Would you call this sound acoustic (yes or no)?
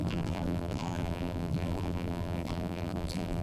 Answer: no